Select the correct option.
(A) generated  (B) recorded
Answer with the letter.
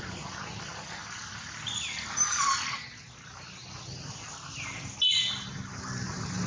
B